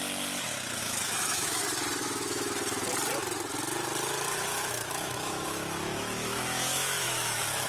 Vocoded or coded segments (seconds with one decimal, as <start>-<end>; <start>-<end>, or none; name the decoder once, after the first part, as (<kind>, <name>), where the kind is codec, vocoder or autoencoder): 0.8-1.6 (autoencoder, DAC-VAE); 2.0-2.5; 4.5-7.7